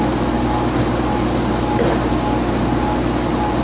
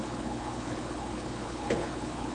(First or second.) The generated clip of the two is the second